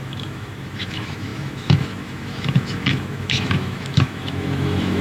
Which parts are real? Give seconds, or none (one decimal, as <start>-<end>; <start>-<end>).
none